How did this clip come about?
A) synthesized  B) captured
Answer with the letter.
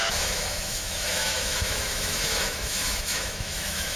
A